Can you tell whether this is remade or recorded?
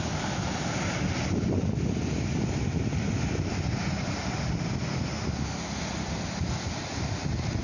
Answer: recorded